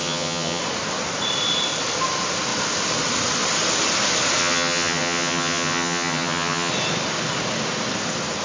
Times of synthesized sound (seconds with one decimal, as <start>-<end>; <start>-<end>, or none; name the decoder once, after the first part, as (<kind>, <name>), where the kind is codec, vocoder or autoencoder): 0.0-0.6 (vocoder, HiFi-GAN); 4.4-6.7